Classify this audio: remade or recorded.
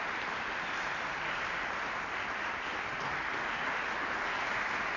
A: recorded